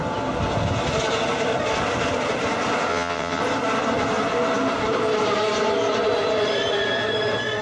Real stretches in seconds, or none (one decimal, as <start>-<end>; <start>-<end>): 0.0-2.9; 3.4-7.6